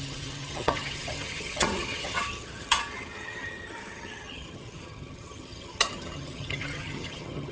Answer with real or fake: fake